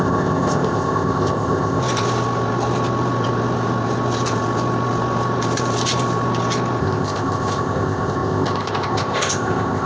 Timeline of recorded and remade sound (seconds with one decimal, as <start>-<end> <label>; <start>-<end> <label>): 0.0-1.8 remade; 1.8-6.8 recorded; 6.8-9.9 remade